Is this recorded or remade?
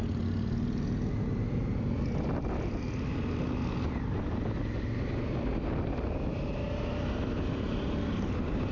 recorded